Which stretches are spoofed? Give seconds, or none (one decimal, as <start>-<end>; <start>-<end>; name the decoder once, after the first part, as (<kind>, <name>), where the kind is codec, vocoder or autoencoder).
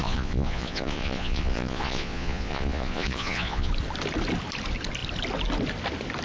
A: 0.0-3.7 (vocoder, Vocos)